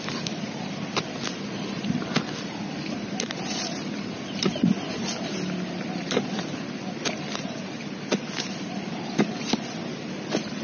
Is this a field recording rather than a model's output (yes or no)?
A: no